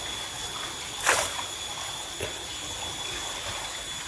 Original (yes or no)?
yes